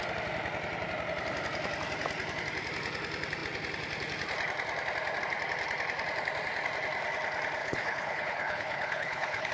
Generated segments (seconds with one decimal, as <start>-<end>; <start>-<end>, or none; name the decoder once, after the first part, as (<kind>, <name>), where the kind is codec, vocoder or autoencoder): 7.6-9.5 (codec, HILCodec)